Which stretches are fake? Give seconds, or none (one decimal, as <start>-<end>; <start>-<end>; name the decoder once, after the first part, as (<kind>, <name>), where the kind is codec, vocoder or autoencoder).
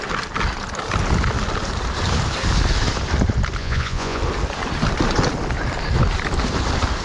3.6-4.2 (vocoder, Vocos)